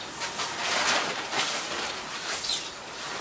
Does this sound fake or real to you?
fake